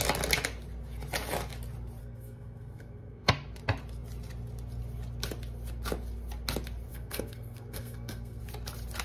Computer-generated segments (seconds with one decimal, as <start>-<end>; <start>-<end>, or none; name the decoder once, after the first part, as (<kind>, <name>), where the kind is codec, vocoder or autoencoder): 2.0-3.3 (codec, SNAC); 6.9-8.4

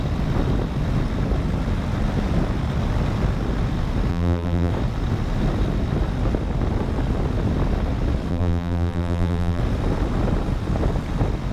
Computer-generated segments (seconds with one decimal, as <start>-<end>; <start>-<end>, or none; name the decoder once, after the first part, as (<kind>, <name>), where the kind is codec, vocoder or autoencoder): 4.1-4.7 (vocoder, BigVGAN v2); 8.3-9.6

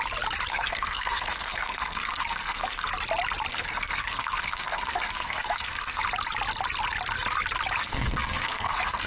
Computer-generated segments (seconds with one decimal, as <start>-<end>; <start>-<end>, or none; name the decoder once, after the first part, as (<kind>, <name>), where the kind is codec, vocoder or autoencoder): 0.5-2.9 (codec, SNAC); 3.5-6.0; 7.8-9.1

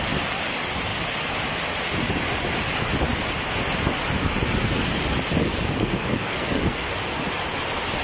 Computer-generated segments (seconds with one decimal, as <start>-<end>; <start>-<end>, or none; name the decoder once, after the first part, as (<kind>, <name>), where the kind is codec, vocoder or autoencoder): 5.4-6.9 (codec, SNAC)

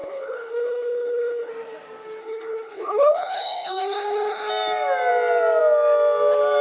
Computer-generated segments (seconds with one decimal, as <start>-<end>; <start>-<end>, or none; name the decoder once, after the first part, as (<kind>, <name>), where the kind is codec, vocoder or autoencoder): 0.0-1.5 (codec, HILCodec); 2.2-4.5

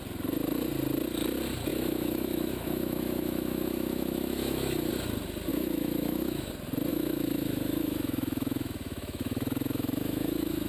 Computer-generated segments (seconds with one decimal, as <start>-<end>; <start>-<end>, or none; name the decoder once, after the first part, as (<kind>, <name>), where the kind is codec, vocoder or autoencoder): 1.7-4.9 (autoencoder, DAC-VAE); 5.5-6.5; 6.9-10.7

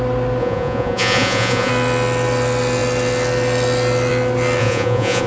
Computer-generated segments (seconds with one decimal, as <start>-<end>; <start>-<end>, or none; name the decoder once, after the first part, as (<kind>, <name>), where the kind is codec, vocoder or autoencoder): 0.4-1.7 (vocoder, Vocos); 4.6-5.3